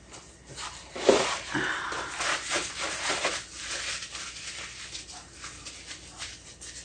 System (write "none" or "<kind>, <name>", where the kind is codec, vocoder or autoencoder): none